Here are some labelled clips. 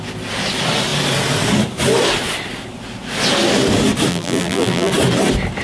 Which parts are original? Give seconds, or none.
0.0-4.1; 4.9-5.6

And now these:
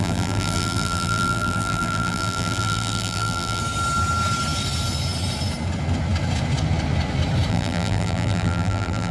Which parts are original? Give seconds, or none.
3.6-7.5

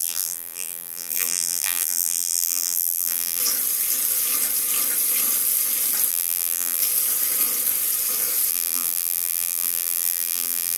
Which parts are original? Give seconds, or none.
3.4-6.1; 6.8-8.5

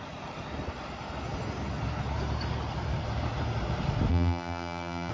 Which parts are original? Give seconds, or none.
0.0-4.1